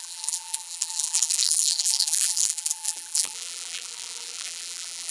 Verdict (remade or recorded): remade